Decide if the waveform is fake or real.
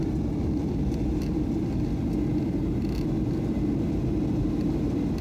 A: real